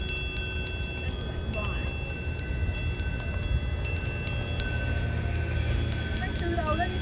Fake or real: real